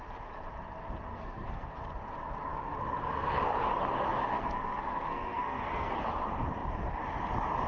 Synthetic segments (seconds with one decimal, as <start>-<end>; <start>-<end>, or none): 1.1-1.7; 4.3-5.9